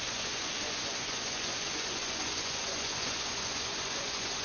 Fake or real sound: fake